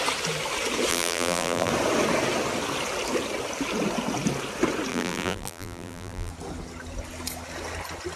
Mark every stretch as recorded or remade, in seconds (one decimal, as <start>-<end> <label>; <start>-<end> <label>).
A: 0.0-0.9 recorded; 0.9-1.7 remade; 1.7-4.9 recorded; 4.9-6.3 remade; 6.3-8.2 recorded